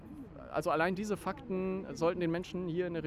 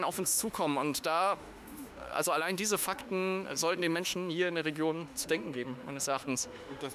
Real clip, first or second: first